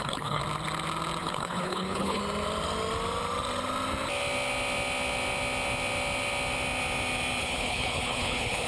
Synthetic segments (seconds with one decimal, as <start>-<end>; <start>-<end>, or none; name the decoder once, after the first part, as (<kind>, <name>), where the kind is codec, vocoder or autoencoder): 0.0-0.4 (codec, HILCodec); 1.2-2.2; 7.4-8.7